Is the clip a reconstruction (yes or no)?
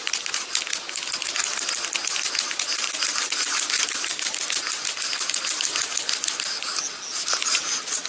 no